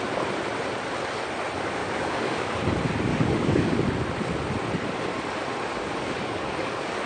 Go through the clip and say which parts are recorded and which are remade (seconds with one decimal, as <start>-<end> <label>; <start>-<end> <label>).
0.0-1.8 recorded; 1.8-2.6 remade; 2.6-3.1 recorded; 3.1-3.8 remade; 3.8-5.7 recorded; 5.7-7.1 remade